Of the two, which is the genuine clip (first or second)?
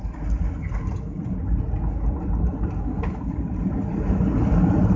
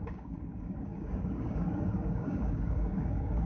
first